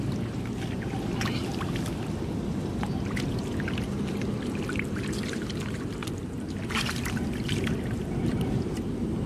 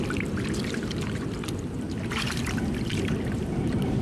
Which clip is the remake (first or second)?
second